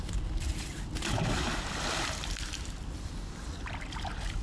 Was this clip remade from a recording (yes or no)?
yes